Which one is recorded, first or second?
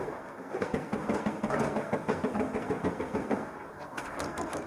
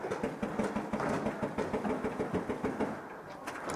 second